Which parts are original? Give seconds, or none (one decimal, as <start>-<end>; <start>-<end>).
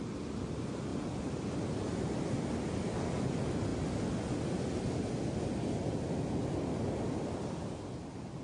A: 0.0-8.4